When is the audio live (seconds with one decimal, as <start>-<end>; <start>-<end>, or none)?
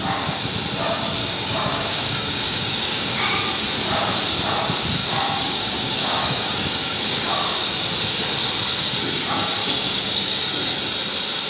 0.0-1.2; 3.4-5.0; 7.7-9.6; 10.5-11.5